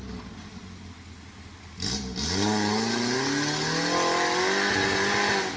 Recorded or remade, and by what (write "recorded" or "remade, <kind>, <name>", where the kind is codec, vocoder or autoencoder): recorded